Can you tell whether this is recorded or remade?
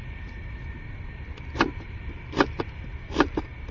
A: remade